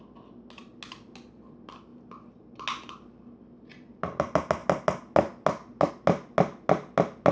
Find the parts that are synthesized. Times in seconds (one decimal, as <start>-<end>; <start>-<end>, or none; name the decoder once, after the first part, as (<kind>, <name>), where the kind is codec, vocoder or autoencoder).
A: none